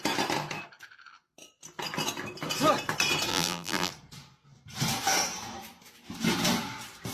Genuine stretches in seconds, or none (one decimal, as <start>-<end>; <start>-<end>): 0.0-3.3; 3.9-7.1